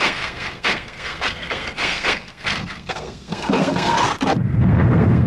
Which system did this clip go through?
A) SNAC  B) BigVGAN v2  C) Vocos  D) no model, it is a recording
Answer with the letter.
A